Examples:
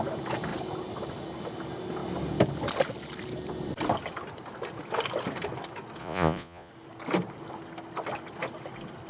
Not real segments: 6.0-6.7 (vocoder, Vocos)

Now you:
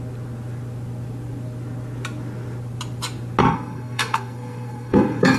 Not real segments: 3.4-5.4 (codec, SNAC)

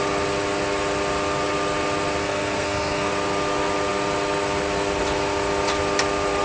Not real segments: 2.2-3.1 (codec, SNAC)

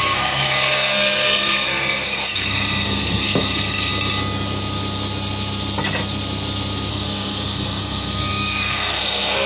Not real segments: 0.0-3.9 (codec, SNAC); 6.9-9.5

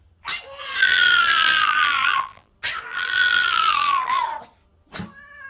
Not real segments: 0.8-2.5 (vocoder, BigVGAN v2); 2.9-4.2

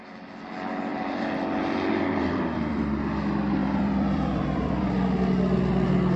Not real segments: 0.9-3.0 (vocoder, BigVGAN v2); 3.6-4.9

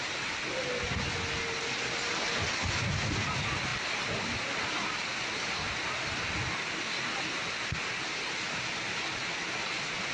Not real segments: none